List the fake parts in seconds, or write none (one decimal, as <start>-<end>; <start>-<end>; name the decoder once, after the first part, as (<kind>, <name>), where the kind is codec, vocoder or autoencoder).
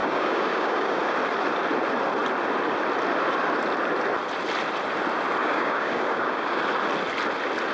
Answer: 0.0-1.0 (codec, DAC); 5.4-6.6